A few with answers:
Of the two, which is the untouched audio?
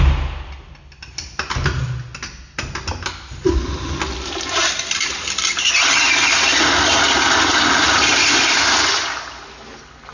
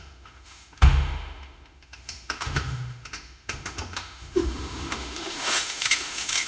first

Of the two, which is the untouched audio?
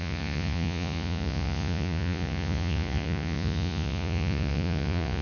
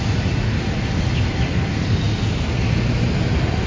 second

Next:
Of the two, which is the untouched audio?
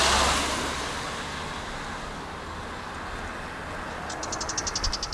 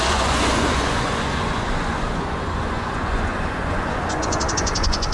first